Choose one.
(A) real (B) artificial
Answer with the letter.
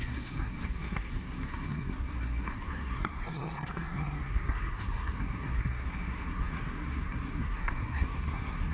B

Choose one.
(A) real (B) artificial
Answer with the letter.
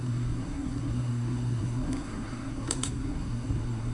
B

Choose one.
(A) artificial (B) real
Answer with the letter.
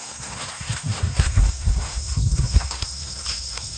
A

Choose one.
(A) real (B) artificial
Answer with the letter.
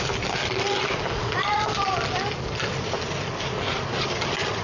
A